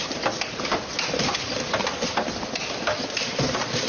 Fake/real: real